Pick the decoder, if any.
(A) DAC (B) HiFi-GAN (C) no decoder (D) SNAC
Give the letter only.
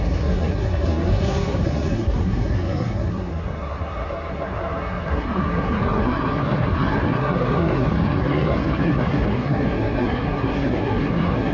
D